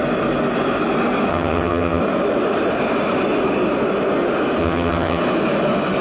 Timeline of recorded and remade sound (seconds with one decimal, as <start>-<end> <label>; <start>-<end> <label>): 0.0-1.3 recorded; 1.3-2.0 remade; 2.0-4.6 recorded; 4.6-5.2 remade; 5.2-6.0 recorded